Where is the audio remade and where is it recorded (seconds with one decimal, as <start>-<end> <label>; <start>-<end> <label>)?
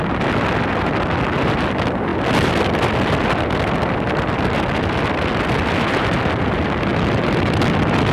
0.0-6.9 recorded; 6.9-7.6 remade; 7.6-8.1 recorded